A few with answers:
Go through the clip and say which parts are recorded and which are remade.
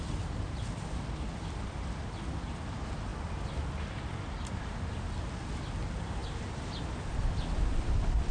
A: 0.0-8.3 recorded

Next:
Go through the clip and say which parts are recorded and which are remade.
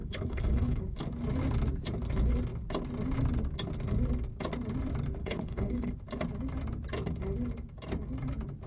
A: 0.0-0.8 remade; 0.8-5.2 recorded; 5.2-5.9 remade; 5.9-8.7 recorded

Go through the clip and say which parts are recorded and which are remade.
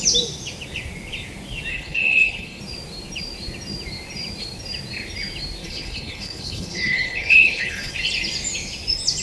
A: 0.0-1.7 recorded; 1.7-2.6 remade; 2.6-5.6 recorded; 5.6-7.9 remade; 7.9-9.2 recorded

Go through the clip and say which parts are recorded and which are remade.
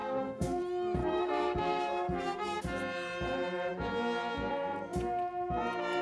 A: 0.0-0.6 remade; 0.6-1.0 recorded; 1.0-2.6 remade; 2.6-6.0 recorded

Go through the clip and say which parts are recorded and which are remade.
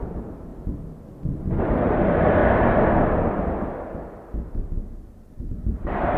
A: 0.0-0.5 remade; 0.5-1.6 recorded; 1.6-2.4 remade; 2.4-5.4 recorded; 5.4-6.2 remade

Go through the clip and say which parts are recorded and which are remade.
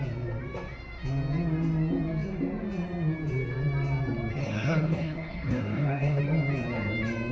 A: 0.0-4.4 recorded; 4.4-6.2 remade; 6.2-7.3 recorded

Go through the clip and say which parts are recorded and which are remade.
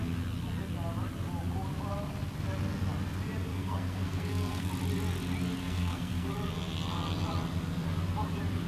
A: 0.0-3.5 recorded; 3.5-4.7 remade; 4.7-5.6 recorded; 5.6-6.3 remade; 6.3-8.7 recorded